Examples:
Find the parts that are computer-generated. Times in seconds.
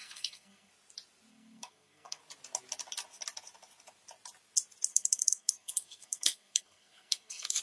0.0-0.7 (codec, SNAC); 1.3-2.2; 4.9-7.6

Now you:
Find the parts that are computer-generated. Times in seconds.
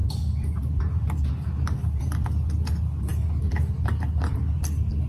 none